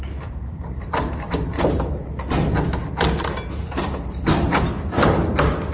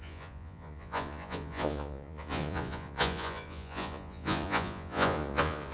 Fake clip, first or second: second